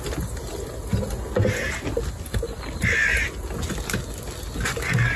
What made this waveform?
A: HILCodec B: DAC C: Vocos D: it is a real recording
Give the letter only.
D